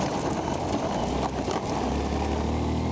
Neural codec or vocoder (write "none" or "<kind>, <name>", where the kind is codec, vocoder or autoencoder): none